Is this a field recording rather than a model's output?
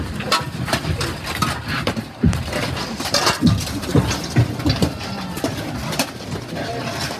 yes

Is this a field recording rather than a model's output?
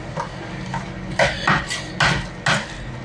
yes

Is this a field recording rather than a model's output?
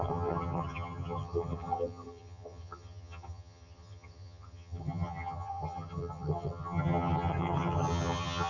no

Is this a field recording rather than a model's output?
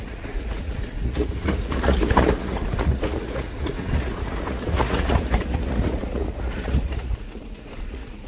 no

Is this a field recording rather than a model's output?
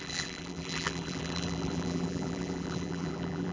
no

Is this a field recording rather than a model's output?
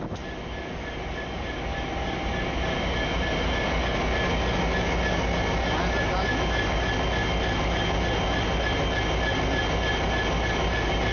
yes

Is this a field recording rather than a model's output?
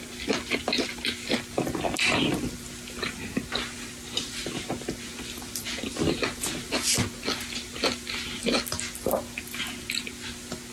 yes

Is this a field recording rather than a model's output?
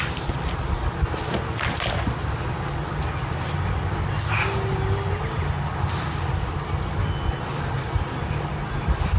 yes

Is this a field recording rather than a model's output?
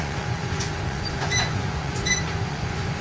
no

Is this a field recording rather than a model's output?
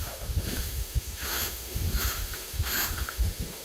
no